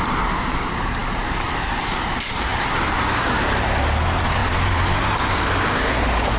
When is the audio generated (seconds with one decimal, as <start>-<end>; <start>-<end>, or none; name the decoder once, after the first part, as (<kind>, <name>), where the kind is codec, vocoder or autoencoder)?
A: 0.0-6.4 (vocoder, BigVGAN v2)